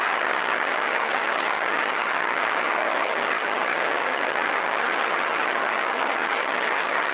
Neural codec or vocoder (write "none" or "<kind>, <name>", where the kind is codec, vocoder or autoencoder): vocoder, HiFi-GAN